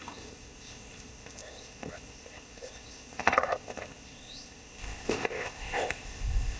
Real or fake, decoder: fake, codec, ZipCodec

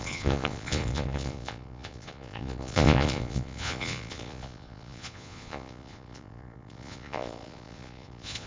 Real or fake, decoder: fake, vocoder, Vocos